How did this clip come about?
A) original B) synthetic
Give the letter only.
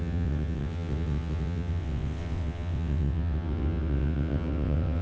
B